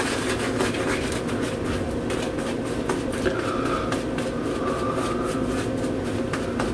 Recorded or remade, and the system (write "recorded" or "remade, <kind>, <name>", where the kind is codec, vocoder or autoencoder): recorded